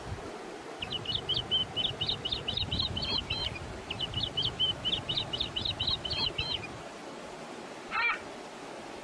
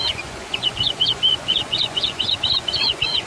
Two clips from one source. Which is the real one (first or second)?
first